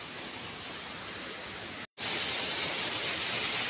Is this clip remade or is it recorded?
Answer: recorded